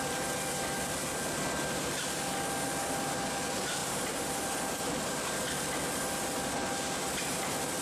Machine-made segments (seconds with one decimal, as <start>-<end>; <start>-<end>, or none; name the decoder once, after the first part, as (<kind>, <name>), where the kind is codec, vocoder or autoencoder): 3.8-5.4 (vocoder, BigVGAN v2)